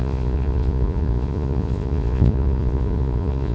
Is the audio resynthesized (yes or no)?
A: yes